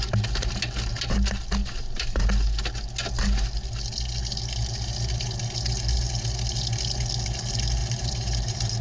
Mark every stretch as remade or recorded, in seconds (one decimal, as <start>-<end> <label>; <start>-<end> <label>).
0.0-1.6 recorded; 1.6-2.2 remade; 2.2-7.8 recorded; 7.8-8.8 remade